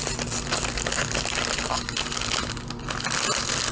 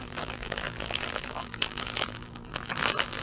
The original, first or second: first